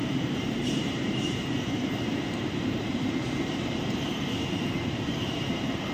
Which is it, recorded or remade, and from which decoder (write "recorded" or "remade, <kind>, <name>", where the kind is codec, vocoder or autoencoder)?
remade, vocoder, BigVGAN v2